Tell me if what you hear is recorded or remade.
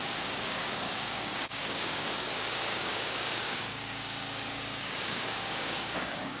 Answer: remade